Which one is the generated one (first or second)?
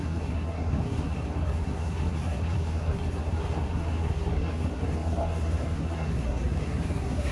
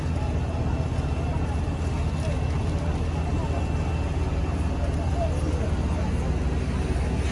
first